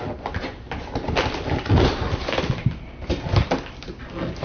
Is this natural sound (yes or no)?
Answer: yes